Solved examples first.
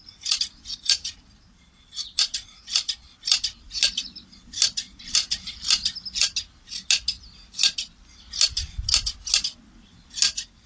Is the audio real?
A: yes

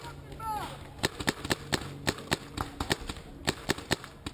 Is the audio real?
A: yes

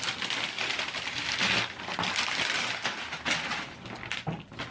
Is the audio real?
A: yes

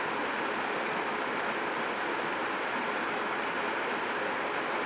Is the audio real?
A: yes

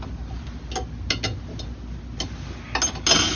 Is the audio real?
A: yes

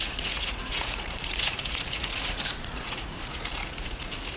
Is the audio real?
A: no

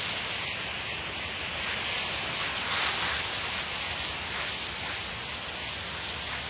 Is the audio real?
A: yes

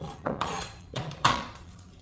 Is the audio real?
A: no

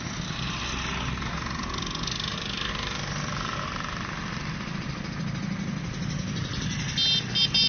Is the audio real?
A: yes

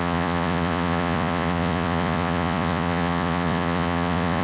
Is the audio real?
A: no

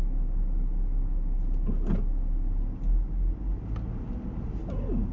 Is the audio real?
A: yes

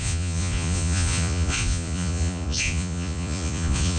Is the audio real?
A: no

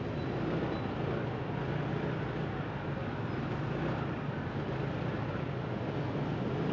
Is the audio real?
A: yes